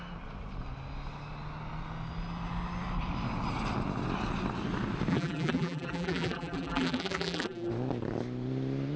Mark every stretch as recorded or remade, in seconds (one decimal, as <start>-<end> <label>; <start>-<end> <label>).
0.0-5.1 recorded; 5.1-7.7 remade; 7.7-9.0 recorded